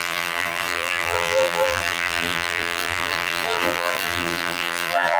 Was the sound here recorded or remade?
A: remade